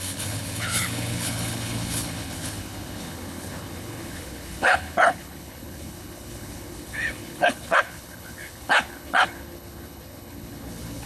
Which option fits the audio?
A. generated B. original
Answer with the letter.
A